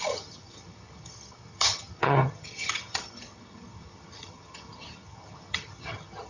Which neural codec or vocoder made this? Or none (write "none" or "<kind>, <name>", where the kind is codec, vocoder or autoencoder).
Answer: vocoder, HiFi-GAN